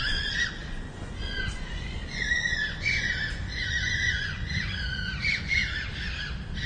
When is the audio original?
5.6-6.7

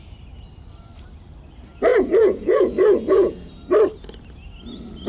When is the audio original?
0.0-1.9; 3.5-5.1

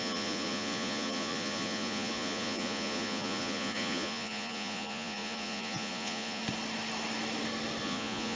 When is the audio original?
6.4-7.8